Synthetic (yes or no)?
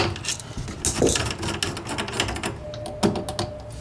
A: no